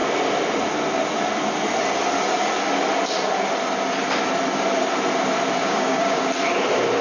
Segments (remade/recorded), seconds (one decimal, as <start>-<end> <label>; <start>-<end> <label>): 0.0-5.6 recorded; 5.6-6.2 remade; 6.2-7.0 recorded